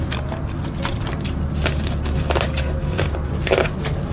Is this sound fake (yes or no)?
no